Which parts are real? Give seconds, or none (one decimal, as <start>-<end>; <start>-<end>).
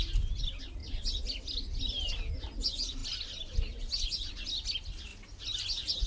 0.0-6.1